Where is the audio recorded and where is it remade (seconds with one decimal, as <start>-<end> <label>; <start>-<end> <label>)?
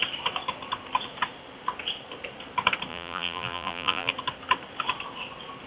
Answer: 0.0-2.9 recorded; 2.9-4.1 remade; 4.1-5.7 recorded